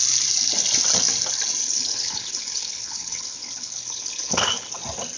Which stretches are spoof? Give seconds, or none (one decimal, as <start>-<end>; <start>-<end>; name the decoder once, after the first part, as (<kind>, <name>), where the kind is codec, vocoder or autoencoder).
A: 1.6-4.7 (codec, HILCodec)